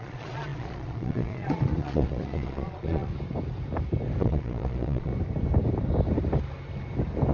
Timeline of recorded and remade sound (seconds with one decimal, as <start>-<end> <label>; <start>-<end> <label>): 0.0-3.1 remade; 3.1-4.2 recorded; 4.2-5.1 remade; 5.1-7.3 recorded